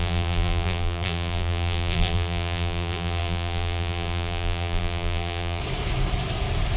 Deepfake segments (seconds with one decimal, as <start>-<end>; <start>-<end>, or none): 0.0-5.6